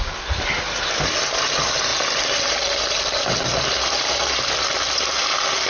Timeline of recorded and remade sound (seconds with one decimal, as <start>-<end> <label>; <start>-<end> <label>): 0.0-5.7 recorded